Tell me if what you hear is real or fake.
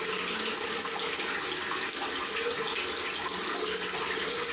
real